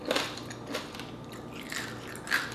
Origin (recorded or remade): recorded